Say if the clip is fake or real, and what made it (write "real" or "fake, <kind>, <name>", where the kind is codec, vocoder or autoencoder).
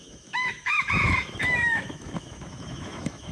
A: fake, autoencoder, DAC-VAE